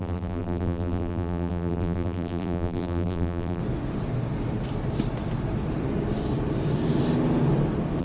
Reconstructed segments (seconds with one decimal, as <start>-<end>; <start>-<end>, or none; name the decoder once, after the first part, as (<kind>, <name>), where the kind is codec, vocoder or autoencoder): 0.0-3.6 (vocoder, BigVGAN v2)